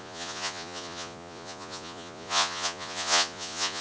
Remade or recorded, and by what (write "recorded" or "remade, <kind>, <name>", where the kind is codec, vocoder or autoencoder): remade, vocoder, Vocos